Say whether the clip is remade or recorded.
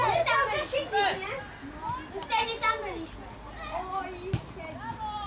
recorded